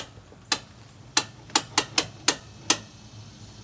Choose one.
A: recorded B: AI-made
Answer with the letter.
A